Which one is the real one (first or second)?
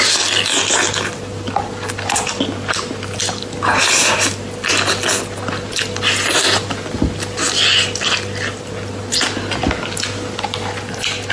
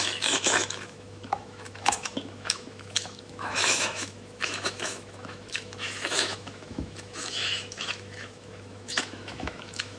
first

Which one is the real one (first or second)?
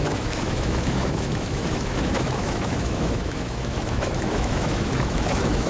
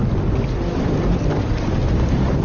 second